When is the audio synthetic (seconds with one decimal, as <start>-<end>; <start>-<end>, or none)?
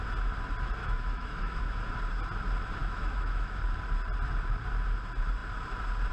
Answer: 0.8-1.6; 2.8-3.6